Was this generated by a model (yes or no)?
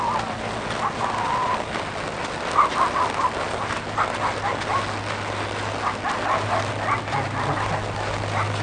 no